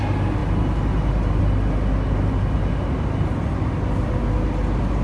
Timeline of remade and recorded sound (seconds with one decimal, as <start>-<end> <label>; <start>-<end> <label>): 0.0-5.0 recorded